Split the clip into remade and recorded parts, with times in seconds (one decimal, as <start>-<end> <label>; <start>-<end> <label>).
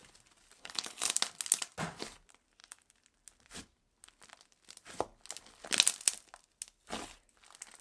0.0-0.6 recorded; 0.6-1.1 remade; 1.1-7.8 recorded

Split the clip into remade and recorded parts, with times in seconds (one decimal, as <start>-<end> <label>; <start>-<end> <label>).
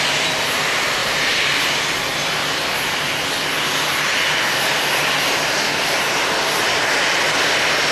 0.0-1.0 recorded; 1.0-1.6 remade; 1.6-7.9 recorded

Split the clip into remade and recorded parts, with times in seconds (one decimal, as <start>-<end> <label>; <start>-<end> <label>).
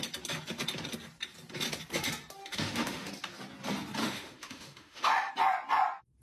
0.0-2.4 recorded; 2.4-3.1 remade; 3.1-4.0 recorded; 4.0-5.3 remade; 5.3-6.2 recorded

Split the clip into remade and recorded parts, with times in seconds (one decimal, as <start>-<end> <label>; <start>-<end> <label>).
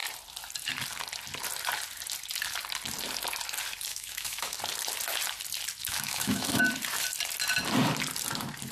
0.0-3.9 recorded; 3.9-4.6 remade; 4.6-5.8 recorded; 5.8-6.6 remade; 6.6-8.7 recorded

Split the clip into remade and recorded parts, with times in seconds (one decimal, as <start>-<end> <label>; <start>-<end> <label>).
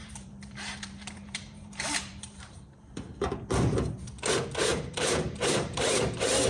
0.0-3.3 remade; 3.3-4.7 recorded; 4.7-6.5 remade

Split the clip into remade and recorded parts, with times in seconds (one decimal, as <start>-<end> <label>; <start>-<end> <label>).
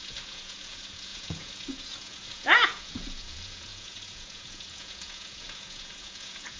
0.0-6.6 remade